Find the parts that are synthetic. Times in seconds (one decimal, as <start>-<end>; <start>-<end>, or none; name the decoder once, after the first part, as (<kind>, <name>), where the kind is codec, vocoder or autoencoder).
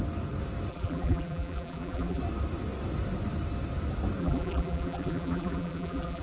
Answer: 0.7-2.2 (vocoder, BigVGAN v2); 4.2-6.2